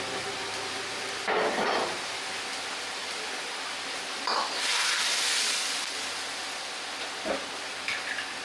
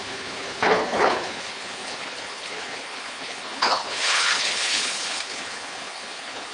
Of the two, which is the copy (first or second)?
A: second